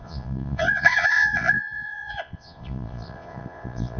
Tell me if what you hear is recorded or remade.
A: remade